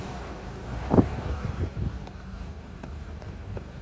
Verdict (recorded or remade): remade